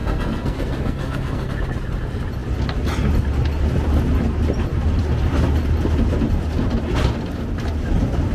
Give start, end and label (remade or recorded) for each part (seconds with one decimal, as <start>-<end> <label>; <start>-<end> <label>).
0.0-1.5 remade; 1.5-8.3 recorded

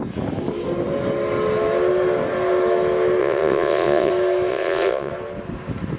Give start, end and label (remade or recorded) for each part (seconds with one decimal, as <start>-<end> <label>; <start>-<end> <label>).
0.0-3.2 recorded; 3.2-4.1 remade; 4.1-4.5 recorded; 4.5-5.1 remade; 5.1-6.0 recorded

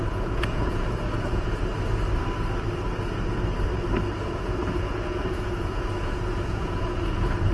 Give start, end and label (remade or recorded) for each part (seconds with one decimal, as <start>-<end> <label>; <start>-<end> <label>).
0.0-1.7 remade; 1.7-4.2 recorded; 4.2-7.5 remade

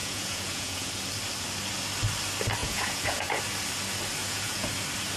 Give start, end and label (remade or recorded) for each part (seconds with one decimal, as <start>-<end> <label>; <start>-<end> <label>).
0.0-0.9 remade; 0.9-2.6 recorded; 2.6-3.4 remade; 3.4-4.2 recorded; 4.2-4.7 remade; 4.7-5.2 recorded

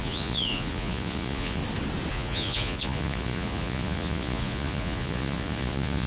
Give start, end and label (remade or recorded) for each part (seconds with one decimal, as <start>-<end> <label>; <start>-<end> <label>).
0.0-1.6 remade; 1.6-2.1 recorded; 2.1-6.1 remade